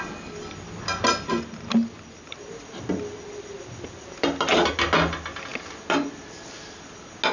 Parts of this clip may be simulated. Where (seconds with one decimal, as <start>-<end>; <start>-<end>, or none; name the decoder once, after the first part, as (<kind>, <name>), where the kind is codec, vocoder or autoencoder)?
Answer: none